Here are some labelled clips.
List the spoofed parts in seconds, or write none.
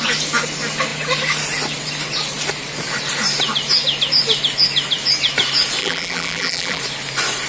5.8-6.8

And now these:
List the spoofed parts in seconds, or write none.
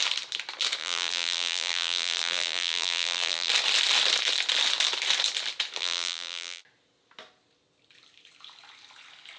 0.8-3.5; 5.8-6.6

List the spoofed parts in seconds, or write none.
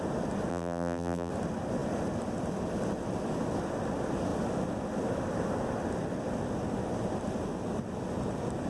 0.5-1.3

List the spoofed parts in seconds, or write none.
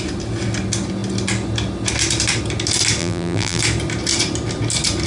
3.0-3.6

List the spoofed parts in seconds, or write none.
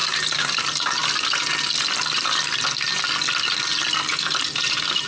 0.0-1.0; 4.1-5.1